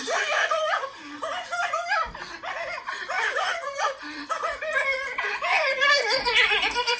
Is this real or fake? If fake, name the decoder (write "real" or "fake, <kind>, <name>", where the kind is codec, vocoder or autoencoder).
fake, vocoder, BigVGAN v2